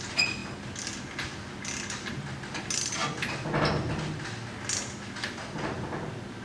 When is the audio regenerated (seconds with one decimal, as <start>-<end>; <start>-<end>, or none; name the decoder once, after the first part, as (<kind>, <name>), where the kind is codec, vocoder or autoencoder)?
none